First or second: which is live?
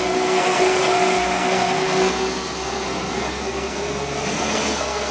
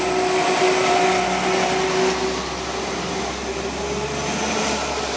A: second